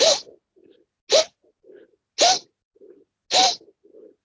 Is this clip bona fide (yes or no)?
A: yes